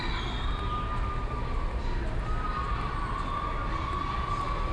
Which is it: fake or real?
real